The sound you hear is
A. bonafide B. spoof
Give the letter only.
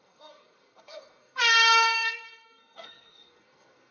B